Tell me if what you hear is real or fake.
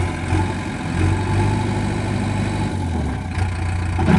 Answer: real